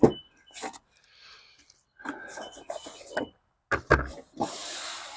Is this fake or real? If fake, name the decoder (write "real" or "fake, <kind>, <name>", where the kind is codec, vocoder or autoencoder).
real